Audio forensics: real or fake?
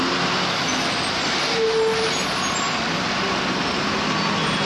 real